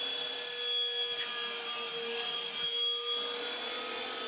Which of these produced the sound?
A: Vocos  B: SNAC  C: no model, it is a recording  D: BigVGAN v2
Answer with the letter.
C